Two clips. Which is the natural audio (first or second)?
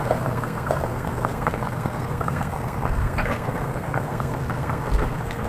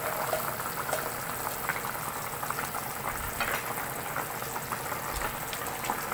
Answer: second